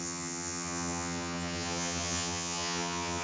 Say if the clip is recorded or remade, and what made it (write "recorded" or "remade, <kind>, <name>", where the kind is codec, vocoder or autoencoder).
remade, vocoder, HiFi-GAN